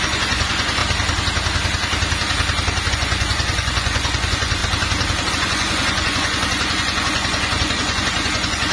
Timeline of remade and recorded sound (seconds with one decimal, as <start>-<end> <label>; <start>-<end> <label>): 0.0-0.8 remade; 0.8-2.9 recorded; 2.9-4.6 remade; 4.6-5.3 recorded; 5.3-8.7 remade